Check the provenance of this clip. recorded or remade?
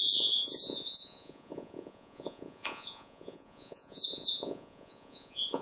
remade